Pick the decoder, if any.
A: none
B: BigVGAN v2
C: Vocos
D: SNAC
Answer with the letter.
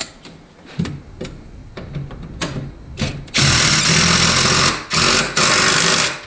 A